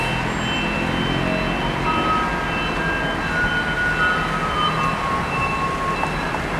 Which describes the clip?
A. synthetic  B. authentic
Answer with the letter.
B